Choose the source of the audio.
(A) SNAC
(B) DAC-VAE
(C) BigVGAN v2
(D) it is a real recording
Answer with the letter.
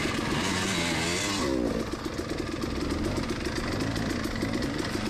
D